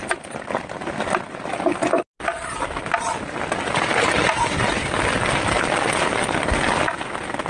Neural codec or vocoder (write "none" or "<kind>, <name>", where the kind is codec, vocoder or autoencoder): none